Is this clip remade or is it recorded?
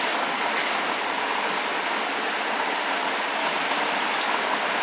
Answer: recorded